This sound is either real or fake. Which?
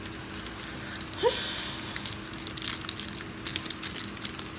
real